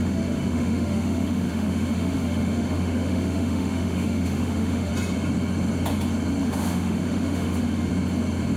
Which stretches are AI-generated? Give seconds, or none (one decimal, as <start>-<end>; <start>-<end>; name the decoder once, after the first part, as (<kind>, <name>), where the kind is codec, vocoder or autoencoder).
0.0-4.9 (autoencoder, DAC-VAE); 6.4-7.9